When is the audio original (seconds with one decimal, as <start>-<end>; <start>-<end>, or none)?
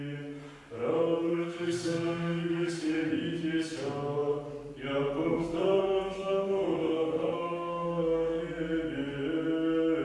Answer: 0.0-1.3; 3.1-5.2; 8.4-10.0